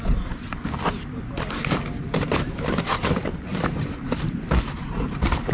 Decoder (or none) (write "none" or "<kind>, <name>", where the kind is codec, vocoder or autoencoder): vocoder, BigVGAN v2